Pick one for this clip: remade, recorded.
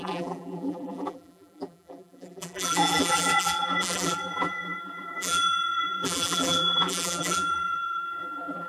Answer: remade